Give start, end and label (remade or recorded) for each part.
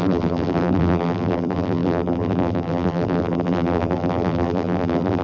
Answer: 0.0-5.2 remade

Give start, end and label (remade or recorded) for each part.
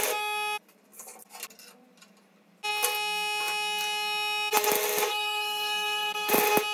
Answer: 0.0-5.1 recorded; 5.1-6.3 remade; 6.3-6.7 recorded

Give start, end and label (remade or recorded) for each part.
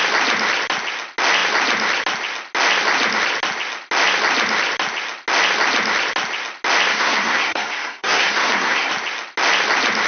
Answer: 0.0-6.9 recorded; 6.9-8.9 remade; 8.9-10.1 recorded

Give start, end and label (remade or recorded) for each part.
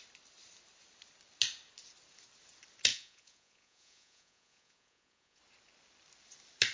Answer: 0.0-2.9 recorded; 2.9-5.4 remade; 5.4-6.7 recorded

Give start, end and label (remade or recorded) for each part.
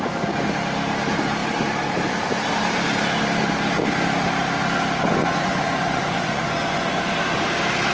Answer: 0.0-5.2 recorded; 5.2-7.0 remade; 7.0-7.9 recorded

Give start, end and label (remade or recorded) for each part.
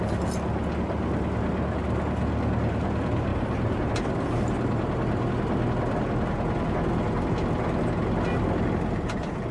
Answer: 0.0-3.3 recorded; 3.3-3.9 remade; 3.9-9.5 recorded